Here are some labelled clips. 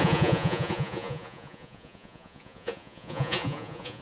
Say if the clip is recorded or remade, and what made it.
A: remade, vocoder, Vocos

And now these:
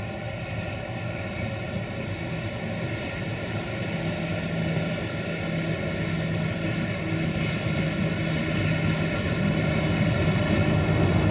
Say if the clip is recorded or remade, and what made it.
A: recorded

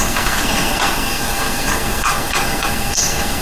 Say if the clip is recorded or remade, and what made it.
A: remade, codec, SNAC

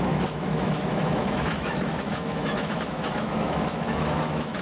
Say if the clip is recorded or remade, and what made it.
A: remade, autoencoder, DAC-VAE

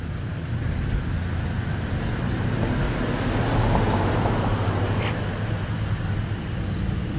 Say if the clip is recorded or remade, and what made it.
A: recorded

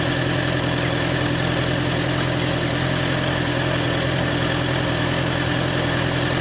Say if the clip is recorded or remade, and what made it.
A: recorded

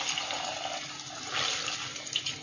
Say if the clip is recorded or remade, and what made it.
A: recorded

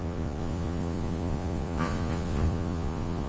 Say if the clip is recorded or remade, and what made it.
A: remade, vocoder, Vocos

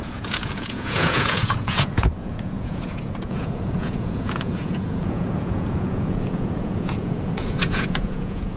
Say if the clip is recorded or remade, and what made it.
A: remade, vocoder, Vocos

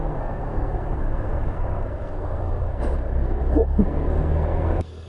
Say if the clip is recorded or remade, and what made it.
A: remade, codec, SNAC